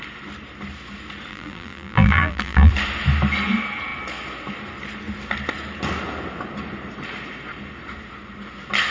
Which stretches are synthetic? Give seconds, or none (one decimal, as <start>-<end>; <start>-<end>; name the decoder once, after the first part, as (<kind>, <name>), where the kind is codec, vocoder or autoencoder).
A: 1.3-2.7 (vocoder, BigVGAN v2)